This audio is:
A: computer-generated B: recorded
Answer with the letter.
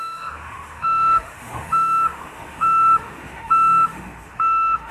A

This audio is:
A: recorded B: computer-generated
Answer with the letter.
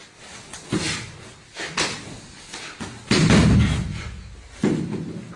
A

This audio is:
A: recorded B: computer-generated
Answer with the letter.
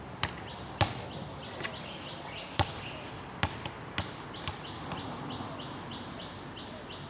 A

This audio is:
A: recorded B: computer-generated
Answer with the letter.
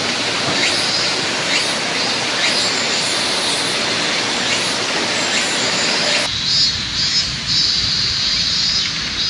A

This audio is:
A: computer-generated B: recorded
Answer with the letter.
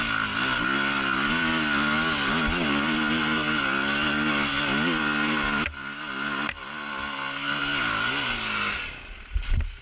B